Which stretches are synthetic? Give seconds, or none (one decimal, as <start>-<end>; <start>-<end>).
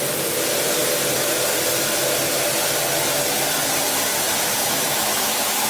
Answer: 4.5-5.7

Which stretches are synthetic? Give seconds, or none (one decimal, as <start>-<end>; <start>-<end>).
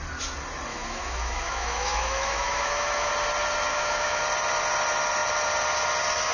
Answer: 0.7-3.1; 3.7-4.2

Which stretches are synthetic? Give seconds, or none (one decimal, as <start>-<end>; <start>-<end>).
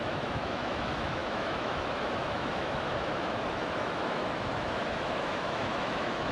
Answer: 0.0-6.3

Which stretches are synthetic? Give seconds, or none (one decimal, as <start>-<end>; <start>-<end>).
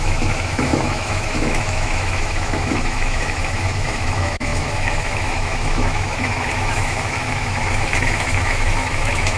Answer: 0.0-9.4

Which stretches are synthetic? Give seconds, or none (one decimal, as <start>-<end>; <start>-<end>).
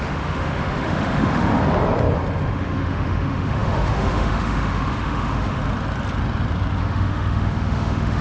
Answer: 0.0-1.5; 2.5-5.6; 6.8-8.2